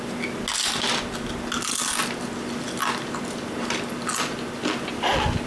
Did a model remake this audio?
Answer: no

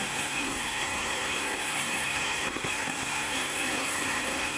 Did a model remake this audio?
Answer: yes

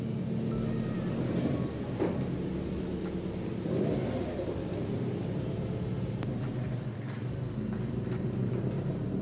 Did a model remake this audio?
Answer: no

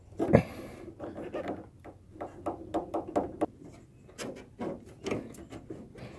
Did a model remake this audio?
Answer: no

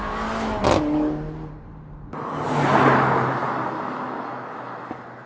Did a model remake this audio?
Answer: no